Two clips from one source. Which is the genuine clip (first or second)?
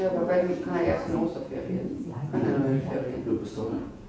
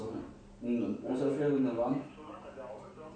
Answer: second